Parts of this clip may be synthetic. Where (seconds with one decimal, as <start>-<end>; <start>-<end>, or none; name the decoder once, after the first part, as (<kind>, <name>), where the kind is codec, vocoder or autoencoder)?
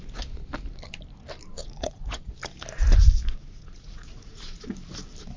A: 1.6-2.3 (vocoder, Vocos); 3.4-4.6